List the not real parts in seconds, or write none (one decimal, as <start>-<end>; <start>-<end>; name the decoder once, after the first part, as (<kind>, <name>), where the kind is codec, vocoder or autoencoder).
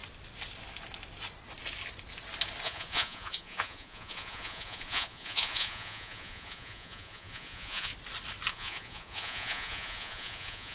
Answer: 2.6-7.9 (vocoder, Vocos); 8.5-10.7